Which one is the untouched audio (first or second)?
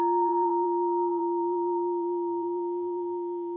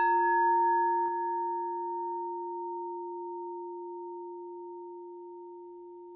second